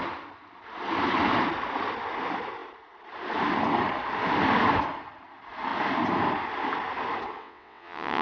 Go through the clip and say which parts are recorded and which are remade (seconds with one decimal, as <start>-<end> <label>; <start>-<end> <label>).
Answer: 0.0-7.4 recorded; 7.4-8.2 remade